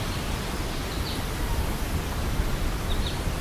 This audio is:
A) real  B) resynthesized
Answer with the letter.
A